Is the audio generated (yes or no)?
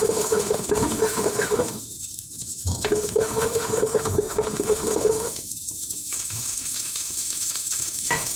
yes